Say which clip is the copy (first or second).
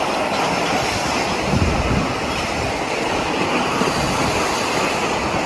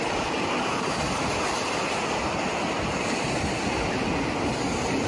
second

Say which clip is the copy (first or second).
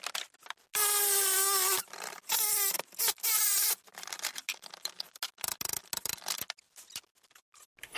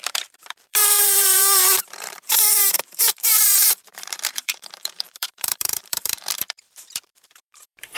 second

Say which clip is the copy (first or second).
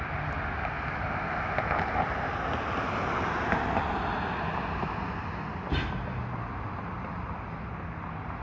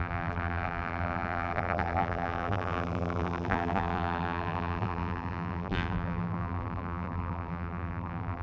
second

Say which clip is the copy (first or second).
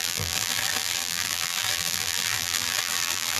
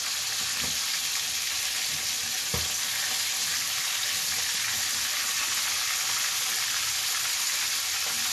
first